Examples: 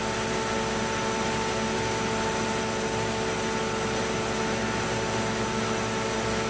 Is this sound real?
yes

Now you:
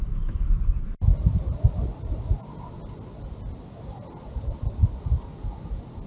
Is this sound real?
yes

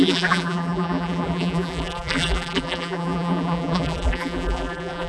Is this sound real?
no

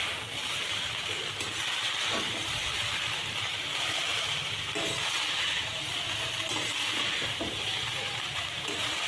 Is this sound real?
no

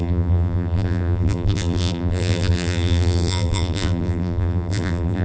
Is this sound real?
no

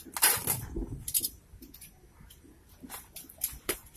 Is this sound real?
yes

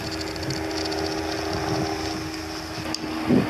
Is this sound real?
no